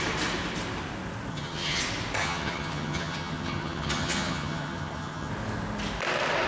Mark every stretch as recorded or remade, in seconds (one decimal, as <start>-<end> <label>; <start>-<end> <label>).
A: 0.0-1.3 recorded; 1.3-1.8 remade; 1.8-2.2 recorded; 2.2-5.3 remade; 5.3-6.5 recorded